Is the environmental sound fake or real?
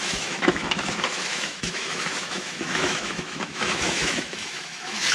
fake